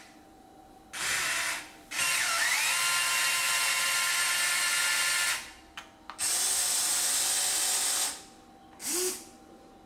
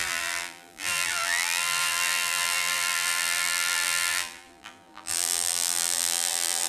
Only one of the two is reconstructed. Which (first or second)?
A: second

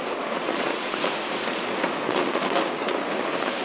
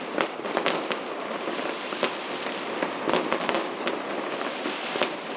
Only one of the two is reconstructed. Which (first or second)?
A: first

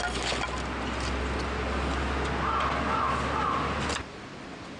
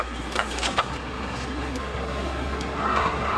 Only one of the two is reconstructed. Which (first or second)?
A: second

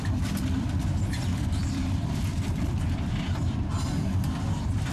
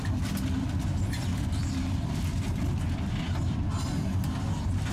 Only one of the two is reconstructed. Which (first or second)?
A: first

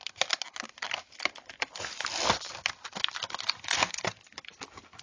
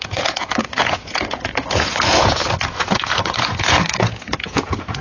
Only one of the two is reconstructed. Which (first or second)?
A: second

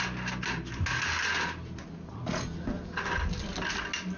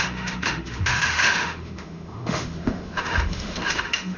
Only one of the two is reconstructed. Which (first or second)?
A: second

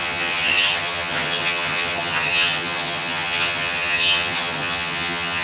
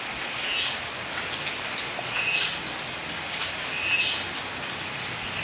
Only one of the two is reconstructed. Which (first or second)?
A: first